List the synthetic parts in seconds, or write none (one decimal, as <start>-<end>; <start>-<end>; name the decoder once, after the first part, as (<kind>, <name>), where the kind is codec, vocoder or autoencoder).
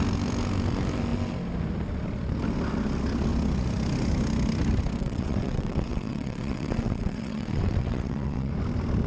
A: 5.0-8.5 (vocoder, WaveNeXt)